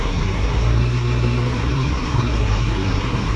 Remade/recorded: remade